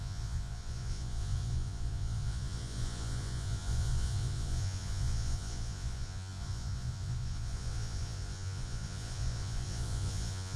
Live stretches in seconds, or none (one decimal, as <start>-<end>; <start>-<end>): none